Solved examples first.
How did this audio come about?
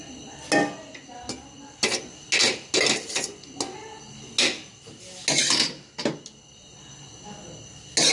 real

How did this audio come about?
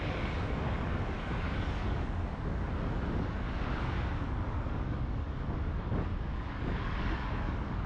fake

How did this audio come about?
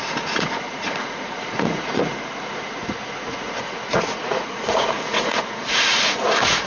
fake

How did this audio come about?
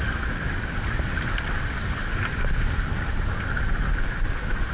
real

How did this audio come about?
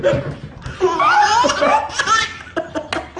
real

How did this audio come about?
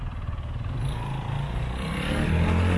real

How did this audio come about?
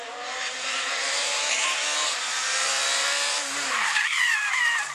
fake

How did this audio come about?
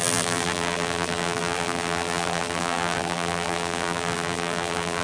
fake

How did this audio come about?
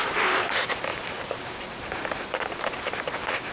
real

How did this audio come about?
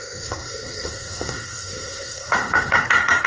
fake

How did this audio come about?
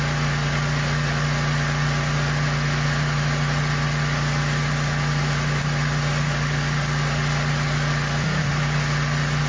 real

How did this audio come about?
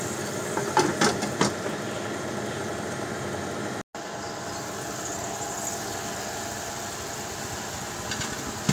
real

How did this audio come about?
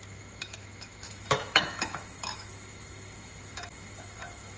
fake